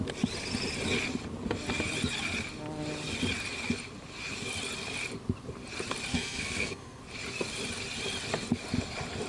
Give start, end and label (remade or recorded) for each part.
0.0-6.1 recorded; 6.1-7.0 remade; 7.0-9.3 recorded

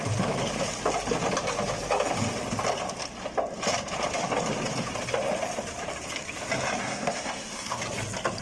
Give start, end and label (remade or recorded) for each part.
0.0-6.8 recorded; 6.8-7.8 remade; 7.8-8.4 recorded

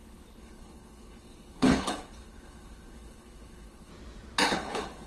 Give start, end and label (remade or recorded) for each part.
0.0-3.9 remade; 3.9-4.4 recorded; 4.4-5.1 remade

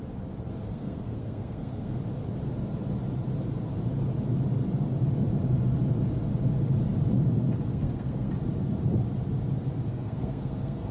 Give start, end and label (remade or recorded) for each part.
0.0-0.7 recorded; 0.7-2.0 remade; 2.0-7.7 recorded; 7.7-8.3 remade; 8.3-9.9 recorded; 9.9-10.9 remade